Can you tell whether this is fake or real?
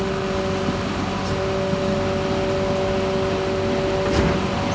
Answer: real